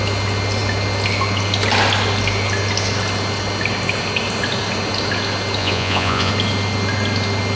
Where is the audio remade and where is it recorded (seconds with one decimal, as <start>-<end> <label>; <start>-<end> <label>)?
0.0-5.6 recorded; 5.6-6.3 remade; 6.3-7.6 recorded